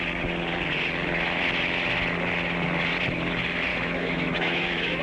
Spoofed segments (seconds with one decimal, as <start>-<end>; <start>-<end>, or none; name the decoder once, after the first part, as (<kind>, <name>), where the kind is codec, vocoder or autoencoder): 3.7-5.0 (autoencoder, DAC-VAE)